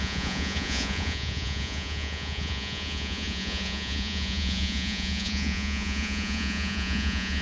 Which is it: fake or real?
fake